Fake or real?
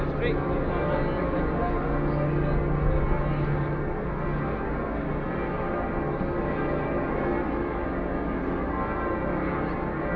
real